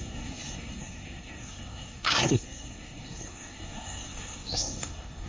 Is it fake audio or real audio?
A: fake